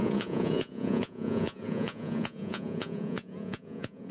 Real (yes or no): no